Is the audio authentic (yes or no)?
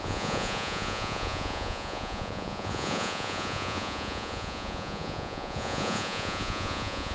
no